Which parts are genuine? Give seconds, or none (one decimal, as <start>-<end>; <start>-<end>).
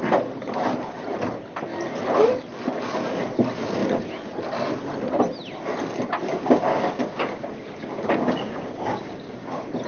0.0-6.3; 9.5-9.9